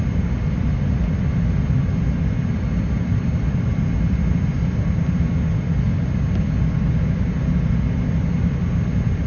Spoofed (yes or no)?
no